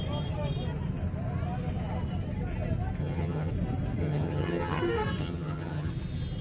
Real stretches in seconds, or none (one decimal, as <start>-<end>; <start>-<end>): 0.0-3.0; 3.5-4.0; 4.8-5.2; 5.9-6.4